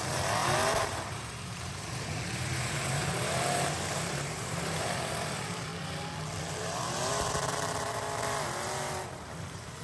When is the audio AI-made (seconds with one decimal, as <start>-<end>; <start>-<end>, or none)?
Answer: 0.0-5.7; 6.4-9.8